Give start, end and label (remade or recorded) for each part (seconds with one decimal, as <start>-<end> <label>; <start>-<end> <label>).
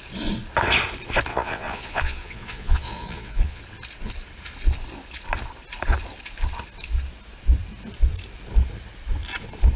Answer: 0.0-1.3 recorded; 1.3-3.6 remade; 3.6-9.8 recorded